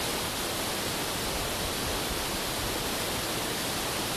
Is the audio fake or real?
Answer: real